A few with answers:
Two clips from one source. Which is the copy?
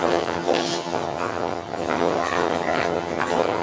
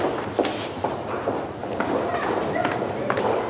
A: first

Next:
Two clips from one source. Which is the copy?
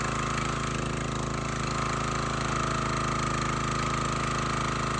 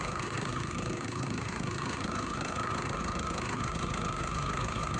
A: second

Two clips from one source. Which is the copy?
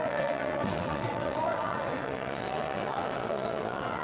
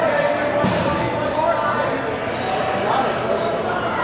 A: first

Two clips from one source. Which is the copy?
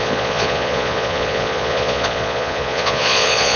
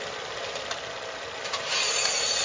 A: first